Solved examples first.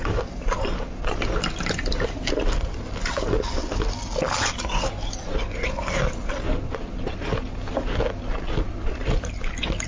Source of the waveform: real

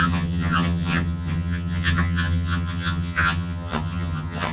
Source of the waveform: fake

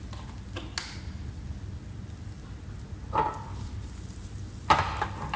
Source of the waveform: real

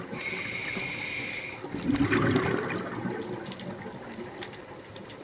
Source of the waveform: real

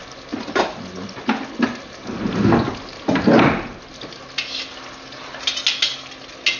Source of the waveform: real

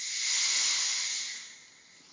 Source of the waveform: real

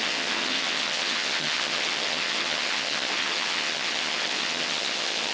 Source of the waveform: fake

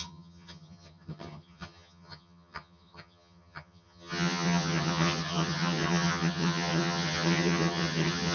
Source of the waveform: fake